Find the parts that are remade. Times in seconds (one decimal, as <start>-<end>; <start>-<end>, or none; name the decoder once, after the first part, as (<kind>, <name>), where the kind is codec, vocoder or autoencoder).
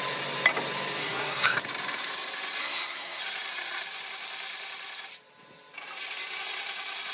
1.0-1.6 (codec, SNAC); 2.6-3.2